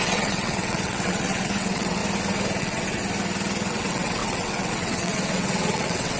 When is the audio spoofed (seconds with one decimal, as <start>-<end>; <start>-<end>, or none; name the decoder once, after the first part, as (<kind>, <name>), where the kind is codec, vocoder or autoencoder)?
0.0-2.0 (vocoder, WaveNeXt); 2.6-3.0; 3.7-6.2